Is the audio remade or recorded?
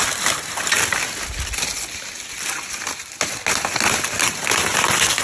recorded